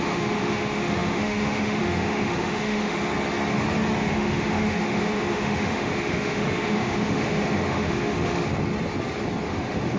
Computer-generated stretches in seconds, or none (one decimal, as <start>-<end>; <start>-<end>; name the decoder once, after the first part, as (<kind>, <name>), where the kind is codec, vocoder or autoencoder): 0.0-3.0 (autoencoder, DAC-VAE); 4.0-8.5; 9.5-10.0